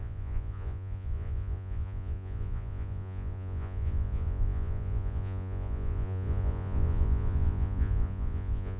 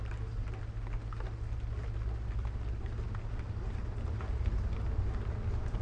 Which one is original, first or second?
second